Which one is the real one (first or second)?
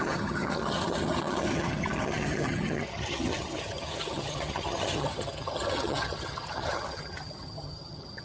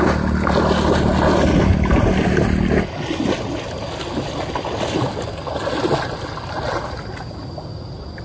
second